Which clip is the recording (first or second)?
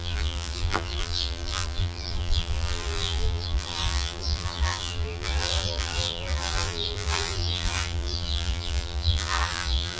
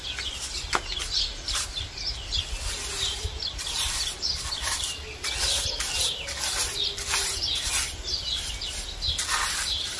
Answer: second